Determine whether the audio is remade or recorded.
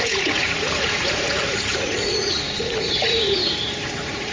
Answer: remade